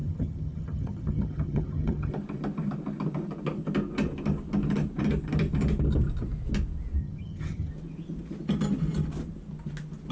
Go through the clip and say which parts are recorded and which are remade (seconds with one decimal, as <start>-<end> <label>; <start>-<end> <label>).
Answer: 0.0-2.1 remade; 2.1-7.0 recorded; 7.0-7.7 remade; 7.7-10.1 recorded

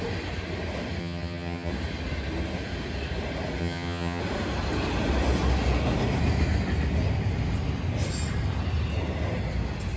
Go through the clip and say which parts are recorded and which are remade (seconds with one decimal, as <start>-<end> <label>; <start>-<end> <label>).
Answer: 0.0-1.0 recorded; 1.0-1.7 remade; 1.7-3.6 recorded; 3.6-4.2 remade; 4.2-10.0 recorded